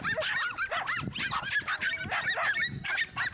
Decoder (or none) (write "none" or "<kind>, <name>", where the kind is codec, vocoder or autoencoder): none